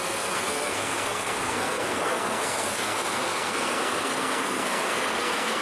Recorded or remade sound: remade